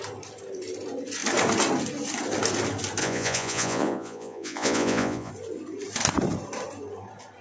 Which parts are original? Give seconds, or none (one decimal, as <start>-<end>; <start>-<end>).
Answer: 0.0-3.0; 5.3-7.4